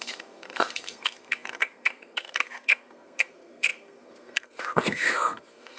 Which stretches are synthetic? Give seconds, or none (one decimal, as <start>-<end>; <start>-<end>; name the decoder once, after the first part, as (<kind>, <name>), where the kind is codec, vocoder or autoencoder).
0.0-5.8 (codec, SNAC)